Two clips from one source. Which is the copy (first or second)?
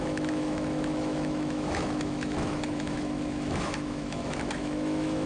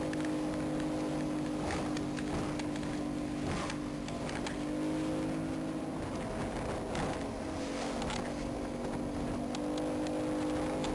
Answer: first